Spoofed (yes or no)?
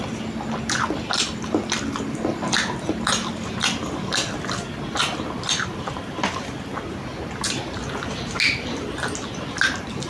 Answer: no